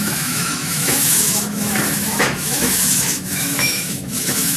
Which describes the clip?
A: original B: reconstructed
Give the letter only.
B